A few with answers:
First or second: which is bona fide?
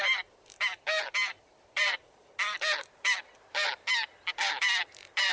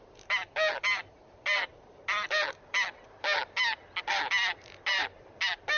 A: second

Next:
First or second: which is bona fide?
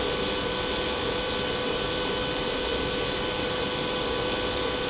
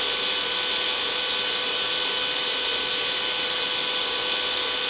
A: second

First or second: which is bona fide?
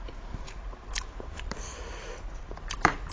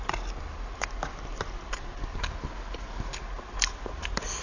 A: second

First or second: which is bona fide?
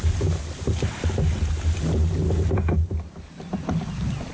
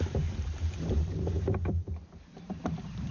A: first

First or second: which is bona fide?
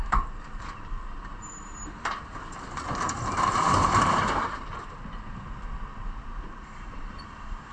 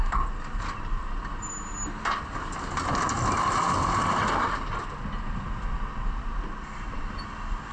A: second